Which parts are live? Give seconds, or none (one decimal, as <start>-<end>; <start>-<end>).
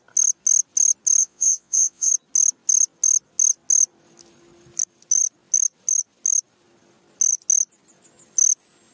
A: 0.0-1.2; 2.1-8.9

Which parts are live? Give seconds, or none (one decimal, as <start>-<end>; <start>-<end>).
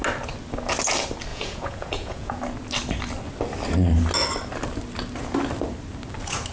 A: 0.0-1.3; 2.4-6.5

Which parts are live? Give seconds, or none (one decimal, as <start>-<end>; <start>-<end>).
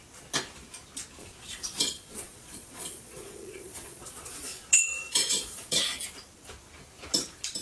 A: 0.0-1.2; 5.8-7.6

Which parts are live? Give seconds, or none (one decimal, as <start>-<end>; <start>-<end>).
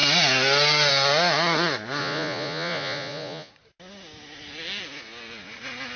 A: 0.0-2.0; 3.5-6.0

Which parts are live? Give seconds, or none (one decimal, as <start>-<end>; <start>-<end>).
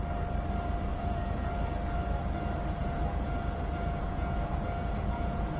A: 0.0-0.9; 1.5-2.8